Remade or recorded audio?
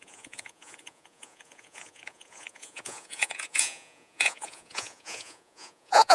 remade